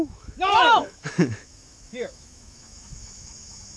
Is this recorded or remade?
remade